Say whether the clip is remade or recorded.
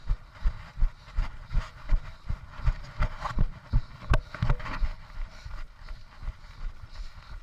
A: recorded